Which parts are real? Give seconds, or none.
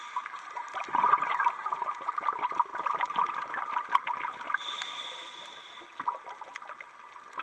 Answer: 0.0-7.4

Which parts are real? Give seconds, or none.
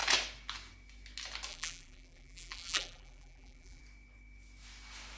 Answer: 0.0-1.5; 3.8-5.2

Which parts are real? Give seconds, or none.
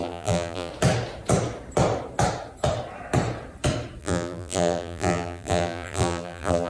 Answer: 0.7-4.0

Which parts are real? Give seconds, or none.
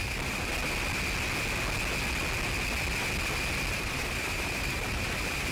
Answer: 0.5-3.7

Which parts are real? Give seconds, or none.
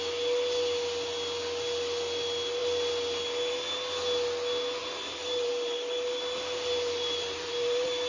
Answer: 0.0-4.8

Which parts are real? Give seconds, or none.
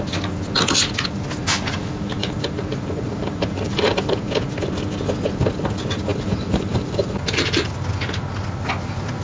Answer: 0.0-2.2; 4.3-6.1; 7.7-9.2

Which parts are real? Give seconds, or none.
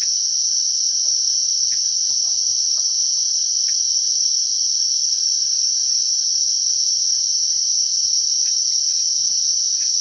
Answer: 0.0-10.0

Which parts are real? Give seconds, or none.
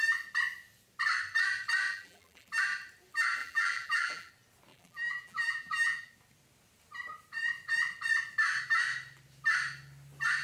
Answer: 0.0-1.9; 2.5-3.4; 4.3-4.7; 6.1-10.4